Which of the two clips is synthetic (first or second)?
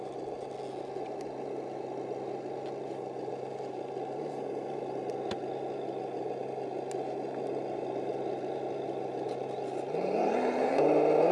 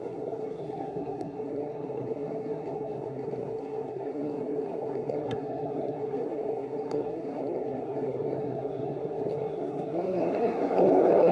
second